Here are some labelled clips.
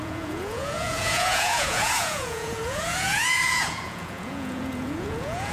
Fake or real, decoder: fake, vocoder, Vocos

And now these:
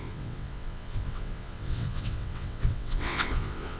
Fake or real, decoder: fake, vocoder, WaveNeXt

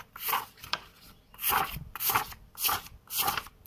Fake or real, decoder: fake, vocoder, BigVGAN v2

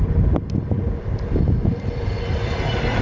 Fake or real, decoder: real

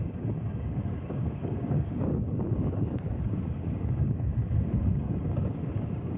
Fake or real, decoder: fake, codec, DAC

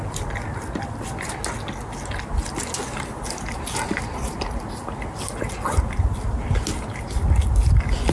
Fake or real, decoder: real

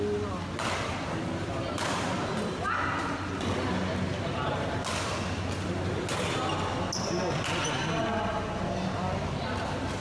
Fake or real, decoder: real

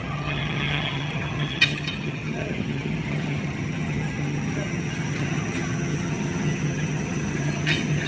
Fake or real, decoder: fake, vocoder, HiFi-GAN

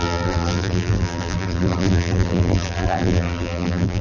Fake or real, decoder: fake, vocoder, BigVGAN v2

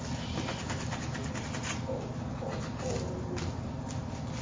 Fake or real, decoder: real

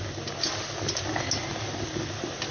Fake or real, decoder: real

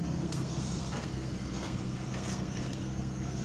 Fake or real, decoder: fake, codec, SNAC